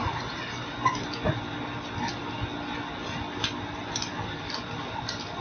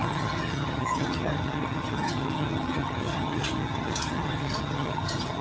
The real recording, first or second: first